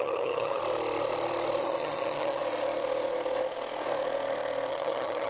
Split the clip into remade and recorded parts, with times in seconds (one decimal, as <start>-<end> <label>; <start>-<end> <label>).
0.0-0.6 remade; 0.6-1.6 recorded; 1.6-2.4 remade; 2.4-4.7 recorded; 4.7-5.3 remade